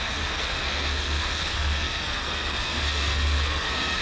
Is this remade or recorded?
remade